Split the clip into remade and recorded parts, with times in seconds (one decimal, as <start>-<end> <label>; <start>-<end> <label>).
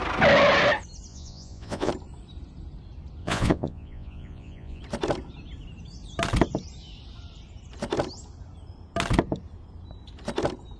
0.0-1.1 recorded; 1.1-1.9 remade; 1.9-3.2 recorded; 3.2-4.8 remade; 4.8-10.8 recorded